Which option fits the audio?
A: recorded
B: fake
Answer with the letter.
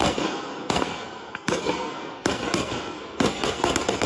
B